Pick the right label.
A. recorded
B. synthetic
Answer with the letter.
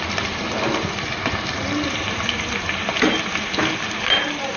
A